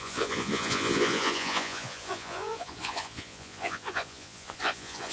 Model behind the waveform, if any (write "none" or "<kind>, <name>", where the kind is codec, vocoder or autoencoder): vocoder, Vocos